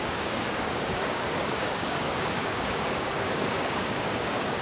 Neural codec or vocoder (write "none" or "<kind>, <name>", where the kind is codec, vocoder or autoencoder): codec, DAC